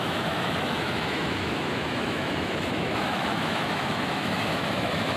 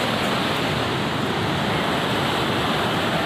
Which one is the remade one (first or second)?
first